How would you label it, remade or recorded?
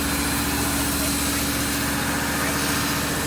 recorded